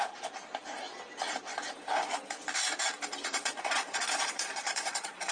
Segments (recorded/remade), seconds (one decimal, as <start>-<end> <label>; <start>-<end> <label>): 0.0-3.2 recorded; 3.2-5.3 remade